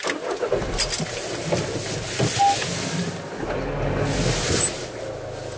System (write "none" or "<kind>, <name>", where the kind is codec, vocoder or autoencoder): none